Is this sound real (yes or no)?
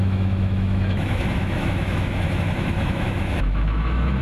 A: no